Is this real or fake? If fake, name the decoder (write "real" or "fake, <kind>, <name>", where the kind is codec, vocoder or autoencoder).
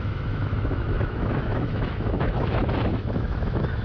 fake, autoencoder, DAC-VAE